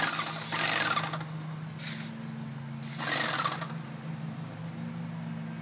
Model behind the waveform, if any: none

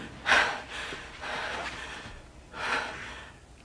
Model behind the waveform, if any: none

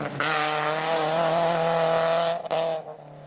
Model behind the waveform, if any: none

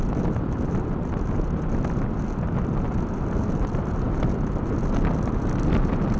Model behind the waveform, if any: none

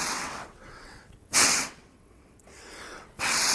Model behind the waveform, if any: vocoder, WaveNeXt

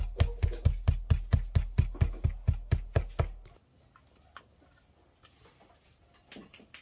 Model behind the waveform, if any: none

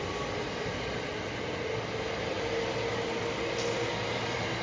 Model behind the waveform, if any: none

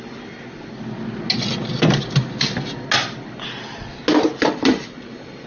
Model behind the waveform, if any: none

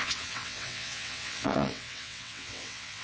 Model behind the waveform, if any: vocoder, WaveNeXt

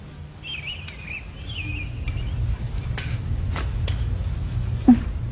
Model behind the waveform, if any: none